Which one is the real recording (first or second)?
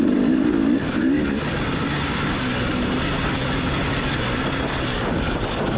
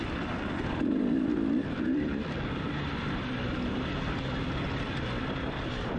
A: first